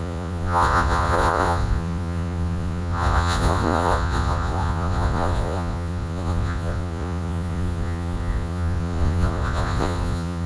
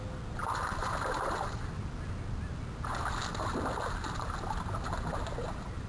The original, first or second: second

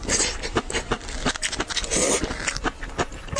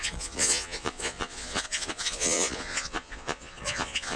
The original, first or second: first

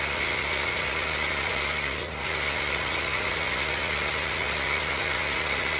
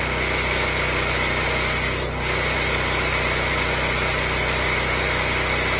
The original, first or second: second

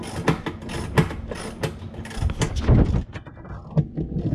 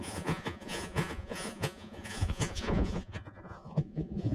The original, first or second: first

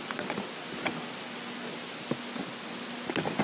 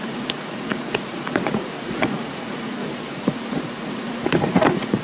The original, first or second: first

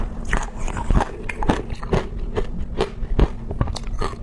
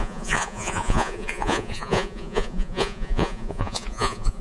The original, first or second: first